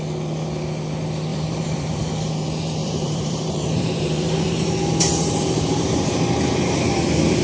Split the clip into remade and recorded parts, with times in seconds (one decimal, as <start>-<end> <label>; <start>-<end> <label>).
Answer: 0.0-1.3 recorded; 1.3-2.0 remade; 2.0-2.8 recorded; 2.8-4.6 remade; 4.6-5.1 recorded; 5.1-6.1 remade; 6.1-7.4 recorded